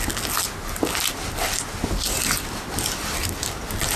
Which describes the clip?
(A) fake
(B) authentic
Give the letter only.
B